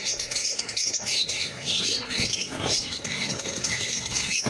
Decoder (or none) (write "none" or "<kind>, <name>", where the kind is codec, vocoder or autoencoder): codec, SNAC